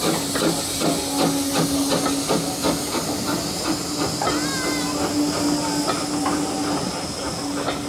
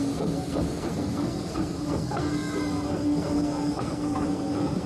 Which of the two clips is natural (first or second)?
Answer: first